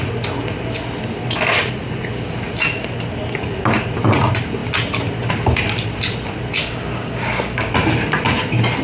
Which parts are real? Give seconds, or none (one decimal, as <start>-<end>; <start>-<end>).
0.0-6.6; 7.7-8.8